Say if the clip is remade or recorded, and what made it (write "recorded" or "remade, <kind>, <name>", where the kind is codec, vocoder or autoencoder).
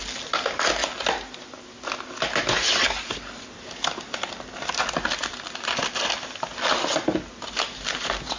recorded